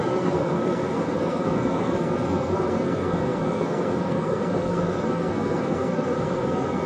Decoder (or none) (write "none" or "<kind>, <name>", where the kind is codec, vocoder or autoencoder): codec, SNAC